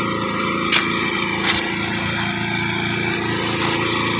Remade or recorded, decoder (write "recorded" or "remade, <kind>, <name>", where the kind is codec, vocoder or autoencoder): recorded